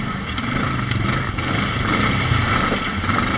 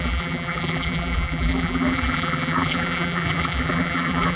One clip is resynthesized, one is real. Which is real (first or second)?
first